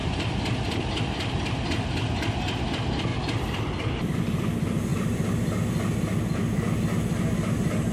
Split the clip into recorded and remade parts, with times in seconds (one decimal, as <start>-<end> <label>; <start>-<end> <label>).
0.0-1.0 remade; 1.0-3.1 recorded; 3.1-4.2 remade; 4.2-7.9 recorded